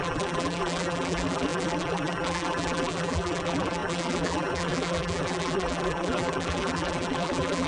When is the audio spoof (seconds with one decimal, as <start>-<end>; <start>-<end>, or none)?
0.0-7.7